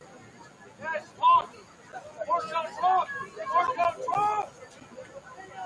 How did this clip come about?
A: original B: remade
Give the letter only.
A